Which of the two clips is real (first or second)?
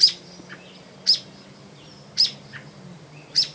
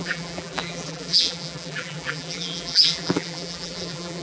first